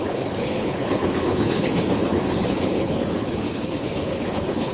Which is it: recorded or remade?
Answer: remade